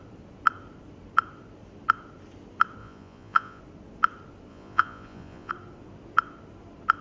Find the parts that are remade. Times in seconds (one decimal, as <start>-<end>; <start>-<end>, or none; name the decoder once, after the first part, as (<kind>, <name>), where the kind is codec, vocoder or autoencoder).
2.8-3.6 (vocoder, Vocos); 4.5-5.5